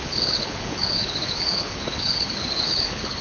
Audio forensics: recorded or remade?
remade